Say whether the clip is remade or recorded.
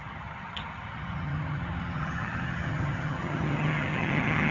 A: remade